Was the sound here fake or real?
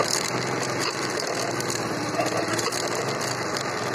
real